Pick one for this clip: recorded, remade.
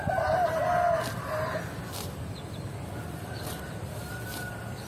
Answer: recorded